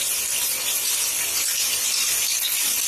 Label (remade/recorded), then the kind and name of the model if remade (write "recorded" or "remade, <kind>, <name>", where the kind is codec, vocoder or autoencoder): recorded